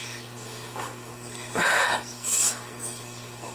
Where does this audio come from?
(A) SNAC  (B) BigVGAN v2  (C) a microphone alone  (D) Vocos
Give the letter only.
A